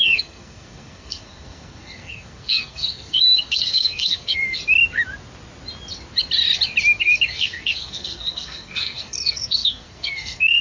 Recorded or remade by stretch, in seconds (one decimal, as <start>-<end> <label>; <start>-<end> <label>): 0.0-4.6 remade; 4.6-7.0 recorded; 7.0-10.6 remade